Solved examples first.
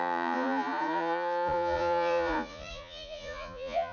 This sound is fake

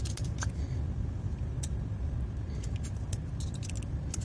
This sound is real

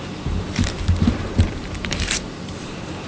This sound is fake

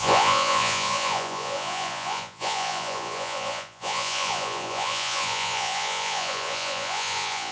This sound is fake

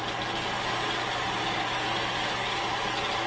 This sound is real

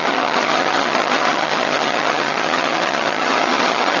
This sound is fake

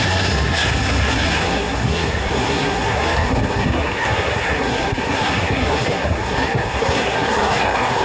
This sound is fake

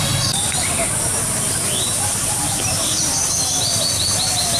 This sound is real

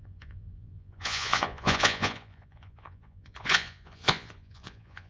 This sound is fake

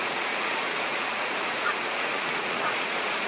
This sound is fake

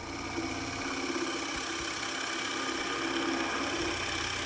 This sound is real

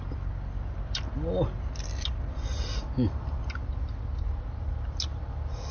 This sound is real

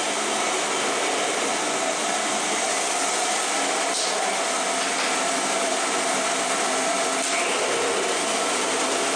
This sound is real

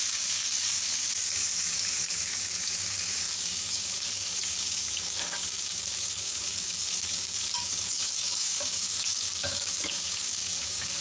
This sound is fake